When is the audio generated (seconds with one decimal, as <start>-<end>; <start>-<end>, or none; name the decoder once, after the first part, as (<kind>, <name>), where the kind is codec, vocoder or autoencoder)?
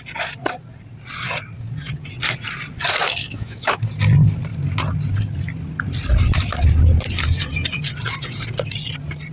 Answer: 3.2-3.8 (autoencoder, DAC-VAE)